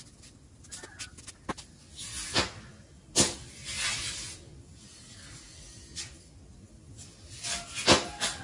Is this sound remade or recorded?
recorded